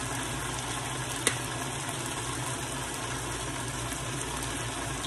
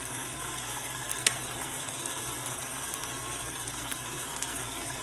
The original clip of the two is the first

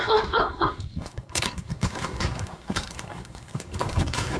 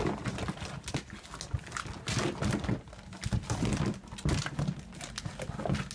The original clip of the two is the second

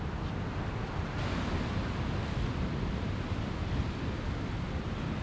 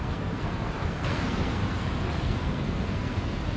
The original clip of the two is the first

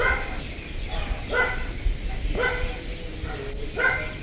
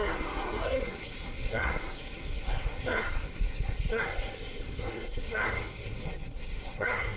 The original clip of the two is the first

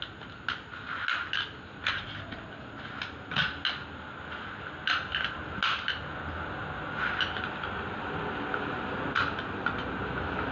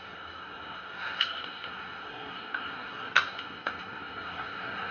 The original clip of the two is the first